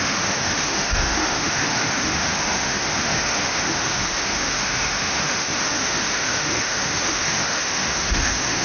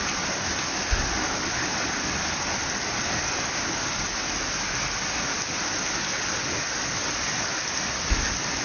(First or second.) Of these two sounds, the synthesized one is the first